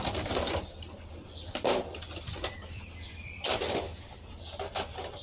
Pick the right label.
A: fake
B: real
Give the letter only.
A